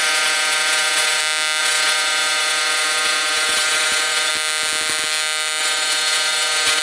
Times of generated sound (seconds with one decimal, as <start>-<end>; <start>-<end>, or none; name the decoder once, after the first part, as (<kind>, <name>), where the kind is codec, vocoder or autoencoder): 0.0-1.2 (vocoder, WaveNeXt); 1.6-4.3; 5.6-6.8